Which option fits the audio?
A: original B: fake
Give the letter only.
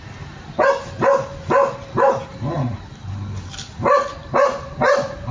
A